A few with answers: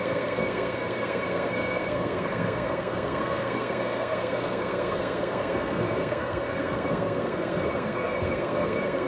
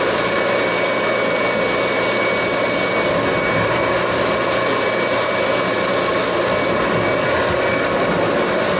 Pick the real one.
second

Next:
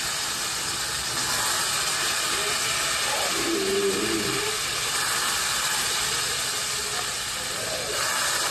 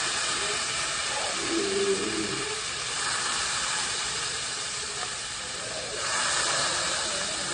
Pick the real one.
first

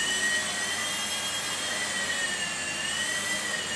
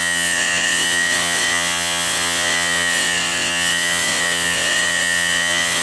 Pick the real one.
first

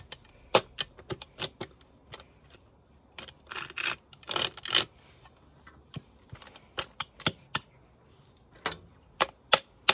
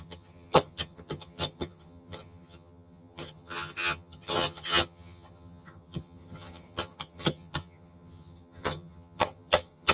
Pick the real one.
first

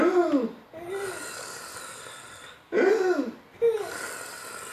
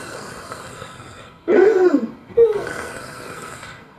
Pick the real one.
first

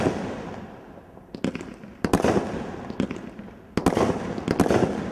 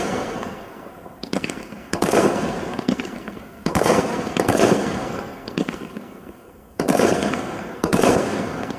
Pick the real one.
first